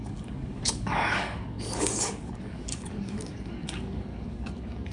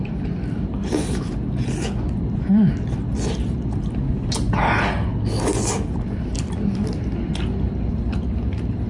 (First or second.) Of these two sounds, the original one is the second